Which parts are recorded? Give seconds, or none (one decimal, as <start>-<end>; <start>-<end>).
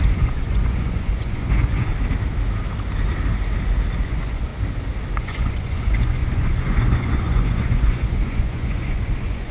1.9-4.0; 4.5-5.2